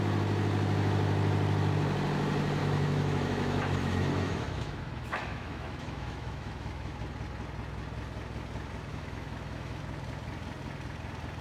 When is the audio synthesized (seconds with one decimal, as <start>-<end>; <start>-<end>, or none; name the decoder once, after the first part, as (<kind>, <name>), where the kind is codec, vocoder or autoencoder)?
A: 2.6-7.0 (autoencoder, DAC-VAE); 8.9-9.8